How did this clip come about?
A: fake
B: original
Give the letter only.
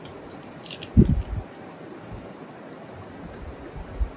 B